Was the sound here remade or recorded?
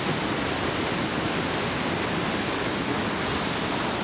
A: recorded